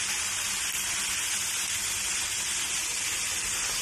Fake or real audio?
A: real